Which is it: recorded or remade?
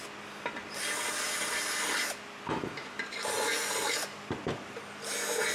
recorded